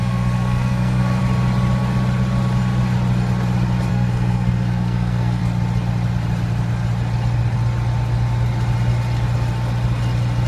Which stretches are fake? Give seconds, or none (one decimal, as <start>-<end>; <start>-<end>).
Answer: 0.0-1.2; 3.9-5.4